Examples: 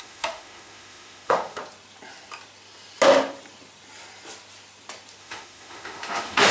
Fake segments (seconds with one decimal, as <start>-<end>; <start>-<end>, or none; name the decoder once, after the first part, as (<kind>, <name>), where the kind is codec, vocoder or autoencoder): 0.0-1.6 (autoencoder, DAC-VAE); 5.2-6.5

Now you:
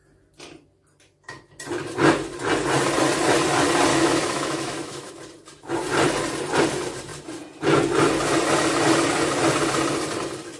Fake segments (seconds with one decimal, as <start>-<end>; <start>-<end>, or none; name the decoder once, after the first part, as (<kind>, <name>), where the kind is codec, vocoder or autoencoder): 3.9-5.1 (autoencoder, DAC-VAE)

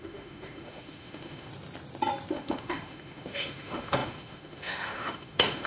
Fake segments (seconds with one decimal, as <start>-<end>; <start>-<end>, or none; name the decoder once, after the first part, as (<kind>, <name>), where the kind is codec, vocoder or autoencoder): 0.0-1.5 (autoencoder, DAC-VAE); 2.3-5.7

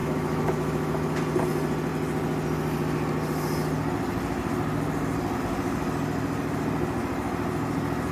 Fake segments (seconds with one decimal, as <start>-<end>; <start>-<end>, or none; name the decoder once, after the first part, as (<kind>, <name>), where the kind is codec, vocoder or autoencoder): 0.0-1.2 (autoencoder, DAC-VAE)

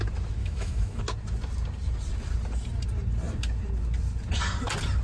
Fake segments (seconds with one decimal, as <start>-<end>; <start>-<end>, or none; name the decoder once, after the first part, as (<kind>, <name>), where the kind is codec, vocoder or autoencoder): 0.4-1.0 (autoencoder, DAC-VAE)

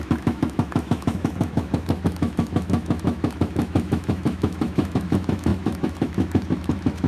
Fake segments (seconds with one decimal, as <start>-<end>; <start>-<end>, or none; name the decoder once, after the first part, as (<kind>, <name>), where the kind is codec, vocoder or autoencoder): 0.0-7.1 (autoencoder, DAC-VAE)